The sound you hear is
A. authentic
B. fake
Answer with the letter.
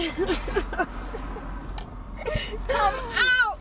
A